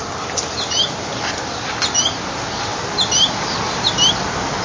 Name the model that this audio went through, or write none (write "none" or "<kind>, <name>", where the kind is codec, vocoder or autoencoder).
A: none